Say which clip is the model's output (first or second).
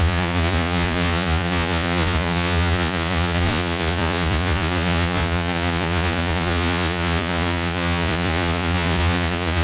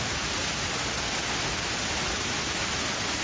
first